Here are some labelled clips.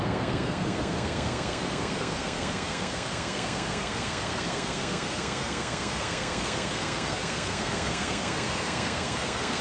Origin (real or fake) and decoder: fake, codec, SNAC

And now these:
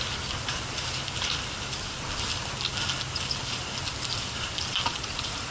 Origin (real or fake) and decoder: real